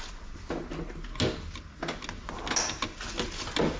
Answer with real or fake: real